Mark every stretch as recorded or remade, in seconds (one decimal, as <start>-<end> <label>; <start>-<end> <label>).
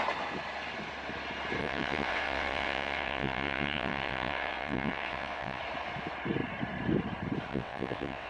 0.0-1.6 recorded; 1.6-5.6 remade; 5.6-7.5 recorded; 7.5-8.3 remade